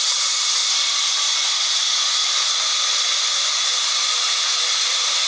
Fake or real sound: real